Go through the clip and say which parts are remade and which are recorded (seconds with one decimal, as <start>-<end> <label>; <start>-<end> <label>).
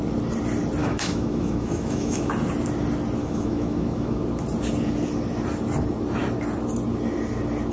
0.0-0.8 recorded; 0.8-2.3 remade; 2.3-3.2 recorded; 3.2-4.2 remade; 4.2-7.7 recorded